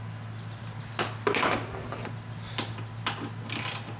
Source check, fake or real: real